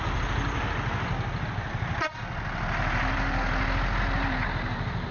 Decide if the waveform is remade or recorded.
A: recorded